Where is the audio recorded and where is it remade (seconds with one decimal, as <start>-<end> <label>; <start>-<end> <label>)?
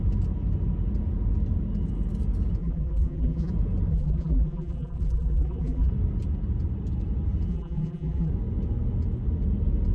0.0-2.6 recorded; 2.6-3.5 remade; 3.5-3.9 recorded; 3.9-5.9 remade; 5.9-7.5 recorded; 7.5-8.3 remade; 8.3-9.9 recorded